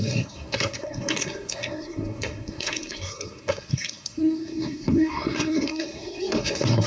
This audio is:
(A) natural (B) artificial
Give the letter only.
B